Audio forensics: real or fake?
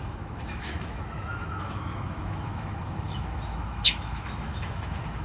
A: fake